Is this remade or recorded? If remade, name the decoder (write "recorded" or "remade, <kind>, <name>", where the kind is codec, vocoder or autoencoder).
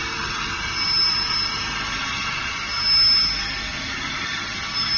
recorded